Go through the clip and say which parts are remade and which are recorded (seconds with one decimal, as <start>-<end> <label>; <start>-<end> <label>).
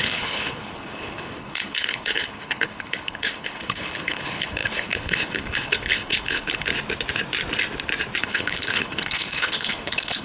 0.0-6.7 remade; 6.7-8.2 recorded; 8.2-10.2 remade